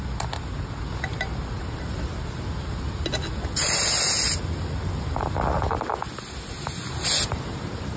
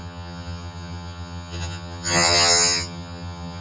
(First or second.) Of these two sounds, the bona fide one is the first